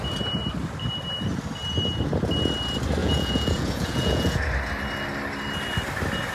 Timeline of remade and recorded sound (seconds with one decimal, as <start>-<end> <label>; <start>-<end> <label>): 0.0-3.0 recorded; 3.0-4.4 remade; 4.4-6.3 recorded